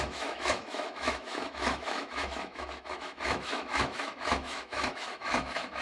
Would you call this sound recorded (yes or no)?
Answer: no